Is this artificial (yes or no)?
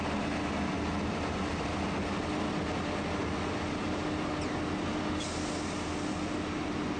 no